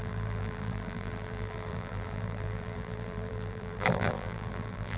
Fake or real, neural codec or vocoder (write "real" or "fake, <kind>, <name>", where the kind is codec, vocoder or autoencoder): fake, vocoder, BigVGAN v2